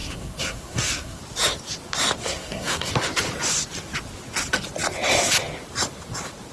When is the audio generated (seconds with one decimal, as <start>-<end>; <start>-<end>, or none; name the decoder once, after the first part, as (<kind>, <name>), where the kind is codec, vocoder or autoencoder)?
0.0-1.2 (codec, SNAC); 2.2-2.9